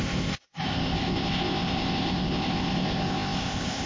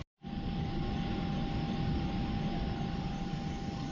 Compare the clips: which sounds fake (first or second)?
first